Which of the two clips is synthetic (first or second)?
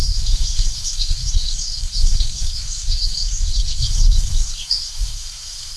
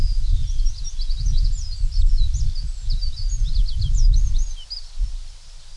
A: first